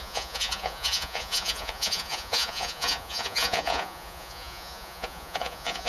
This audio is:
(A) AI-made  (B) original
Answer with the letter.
A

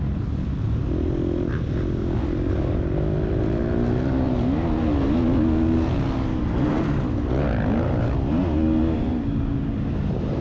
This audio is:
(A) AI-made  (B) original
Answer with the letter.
B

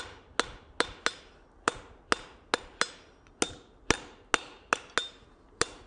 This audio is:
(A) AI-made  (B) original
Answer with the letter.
B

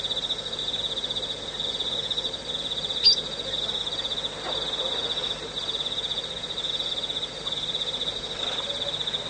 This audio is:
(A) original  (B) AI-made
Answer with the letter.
A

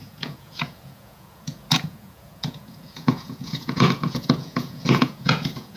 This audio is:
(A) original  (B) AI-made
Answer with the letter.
B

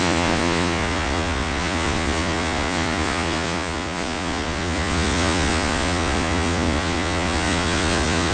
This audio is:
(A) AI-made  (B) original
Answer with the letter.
A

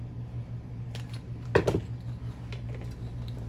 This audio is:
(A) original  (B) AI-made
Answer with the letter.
A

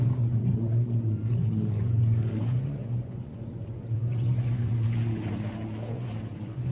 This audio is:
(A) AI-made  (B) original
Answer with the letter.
A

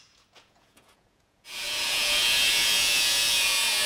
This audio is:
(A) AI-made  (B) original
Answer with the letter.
A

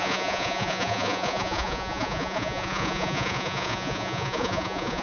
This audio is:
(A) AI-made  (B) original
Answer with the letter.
A